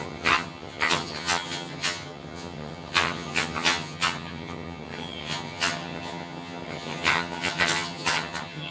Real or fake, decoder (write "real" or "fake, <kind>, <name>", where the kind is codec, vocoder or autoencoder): fake, vocoder, HiFi-GAN